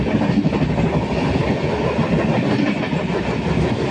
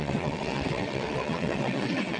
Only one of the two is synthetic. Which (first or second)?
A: second